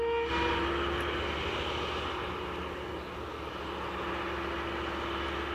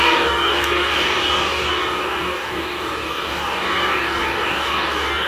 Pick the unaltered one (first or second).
first